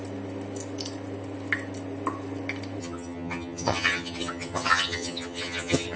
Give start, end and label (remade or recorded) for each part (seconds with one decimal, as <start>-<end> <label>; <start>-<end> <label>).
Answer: 0.0-2.8 recorded; 2.8-6.0 remade